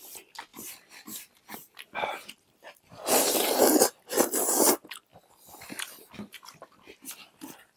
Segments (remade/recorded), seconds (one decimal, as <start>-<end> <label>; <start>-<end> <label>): 0.0-0.5 recorded; 0.5-3.6 remade; 3.6-7.8 recorded